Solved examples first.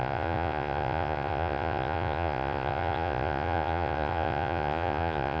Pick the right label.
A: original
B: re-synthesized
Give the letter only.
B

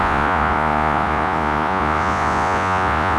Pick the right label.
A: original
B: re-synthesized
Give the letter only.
B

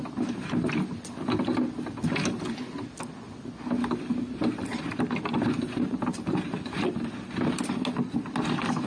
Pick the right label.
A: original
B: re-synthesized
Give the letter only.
A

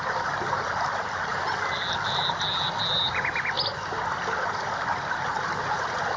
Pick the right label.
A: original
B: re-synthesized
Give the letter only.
A